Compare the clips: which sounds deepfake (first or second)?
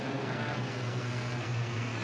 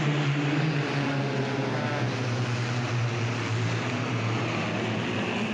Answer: first